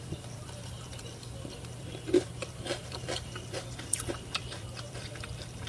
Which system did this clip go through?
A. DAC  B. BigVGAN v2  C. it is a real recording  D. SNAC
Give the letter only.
B